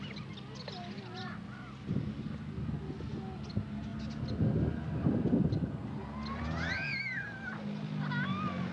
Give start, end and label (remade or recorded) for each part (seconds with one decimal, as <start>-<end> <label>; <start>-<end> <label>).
0.0-8.7 recorded

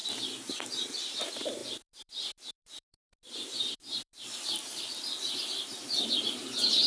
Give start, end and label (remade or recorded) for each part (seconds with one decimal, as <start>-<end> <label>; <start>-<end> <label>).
0.0-1.0 recorded; 1.0-6.9 remade

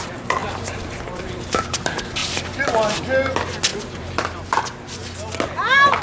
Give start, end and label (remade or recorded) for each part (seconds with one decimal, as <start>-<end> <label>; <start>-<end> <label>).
0.0-0.4 recorded; 0.4-1.2 remade; 1.2-2.2 recorded; 2.2-3.0 remade; 3.0-3.7 recorded; 3.7-4.5 remade; 4.5-6.0 recorded